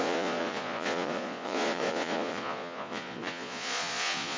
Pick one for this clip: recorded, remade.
remade